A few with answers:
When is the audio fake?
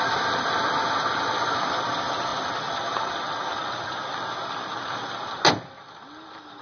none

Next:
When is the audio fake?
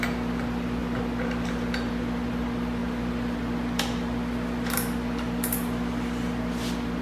none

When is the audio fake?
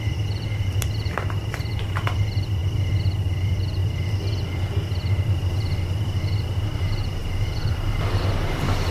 0.0-2.6 (vocoder, BigVGAN v2); 3.2-3.8; 6.8-8.9